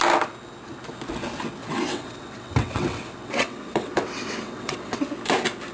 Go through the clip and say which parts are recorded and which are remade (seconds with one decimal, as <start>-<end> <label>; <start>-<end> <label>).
0.0-1.6 recorded; 1.6-5.0 remade; 5.0-5.7 recorded